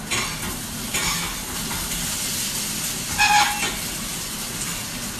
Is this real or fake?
real